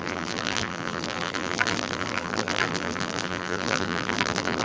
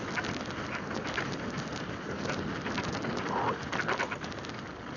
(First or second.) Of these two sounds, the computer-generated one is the first